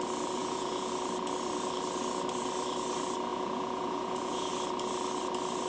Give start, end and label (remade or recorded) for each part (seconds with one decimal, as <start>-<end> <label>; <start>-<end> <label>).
0.0-0.4 recorded; 0.4-0.9 remade; 0.9-3.3 recorded; 3.3-4.5 remade; 4.5-5.7 recorded